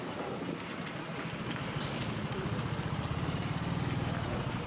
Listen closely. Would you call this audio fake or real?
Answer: real